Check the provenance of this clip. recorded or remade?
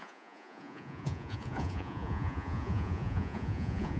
remade